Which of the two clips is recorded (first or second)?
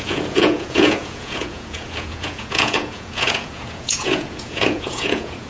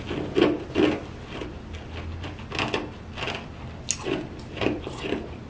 second